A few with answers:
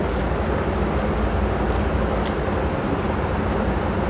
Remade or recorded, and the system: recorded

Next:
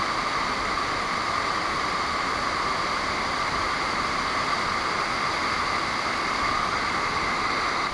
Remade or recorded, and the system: recorded